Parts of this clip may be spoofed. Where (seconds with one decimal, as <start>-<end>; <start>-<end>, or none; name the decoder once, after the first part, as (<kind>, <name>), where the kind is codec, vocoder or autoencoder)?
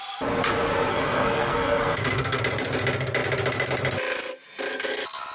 0.9-2.4 (codec, SNAC)